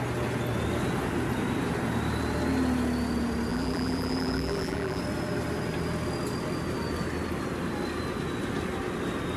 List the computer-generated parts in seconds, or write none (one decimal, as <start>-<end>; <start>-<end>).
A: 3.5-5.0